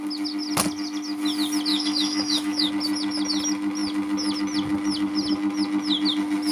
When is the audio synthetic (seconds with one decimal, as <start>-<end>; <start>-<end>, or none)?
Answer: 1.7-2.7

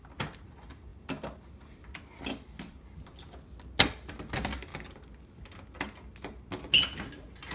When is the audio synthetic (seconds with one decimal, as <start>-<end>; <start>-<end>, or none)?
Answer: none

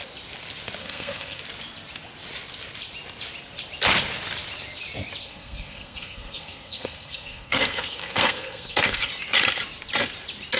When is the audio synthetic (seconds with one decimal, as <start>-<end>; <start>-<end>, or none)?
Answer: 0.8-1.4; 5.2-9.1

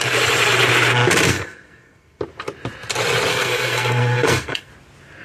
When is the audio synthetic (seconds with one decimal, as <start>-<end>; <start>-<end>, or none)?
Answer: 1.3-2.2; 3.3-4.7

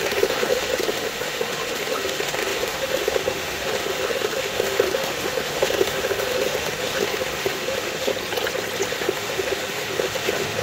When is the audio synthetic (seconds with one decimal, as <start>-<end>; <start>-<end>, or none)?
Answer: 0.0-8.1; 8.9-10.6

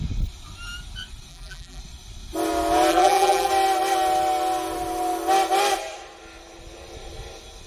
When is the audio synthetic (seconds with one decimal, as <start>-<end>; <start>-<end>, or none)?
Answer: 1.3-1.8; 2.9-3.5